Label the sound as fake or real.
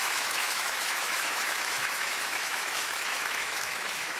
fake